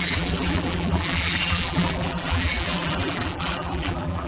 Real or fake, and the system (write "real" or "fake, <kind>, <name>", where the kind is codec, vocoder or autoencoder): fake, vocoder, BigVGAN v2